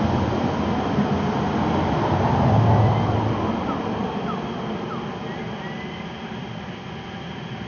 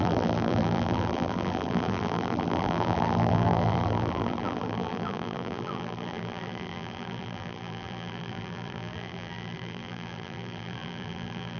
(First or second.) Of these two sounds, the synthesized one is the second